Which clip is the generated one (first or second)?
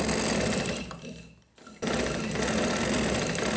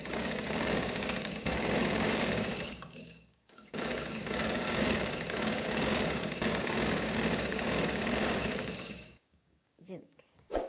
second